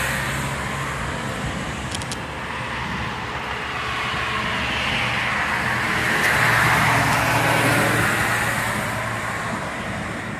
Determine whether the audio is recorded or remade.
recorded